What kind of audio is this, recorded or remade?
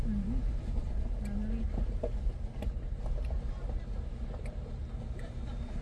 recorded